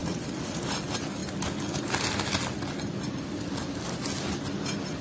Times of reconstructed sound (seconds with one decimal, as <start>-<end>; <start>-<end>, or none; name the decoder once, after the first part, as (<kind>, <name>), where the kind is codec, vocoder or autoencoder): 0.0-0.6 (vocoder, Vocos)